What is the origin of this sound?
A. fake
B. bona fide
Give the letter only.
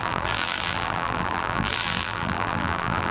A